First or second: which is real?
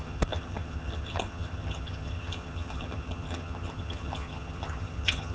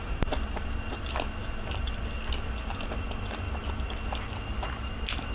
second